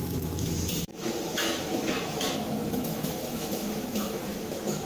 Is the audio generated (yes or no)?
yes